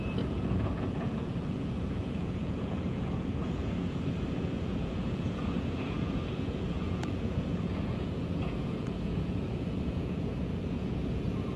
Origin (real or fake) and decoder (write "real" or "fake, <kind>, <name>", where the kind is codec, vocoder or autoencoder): fake, vocoder, Vocos